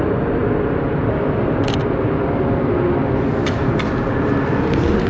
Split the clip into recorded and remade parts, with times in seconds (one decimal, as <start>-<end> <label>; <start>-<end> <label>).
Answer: 0.0-5.1 recorded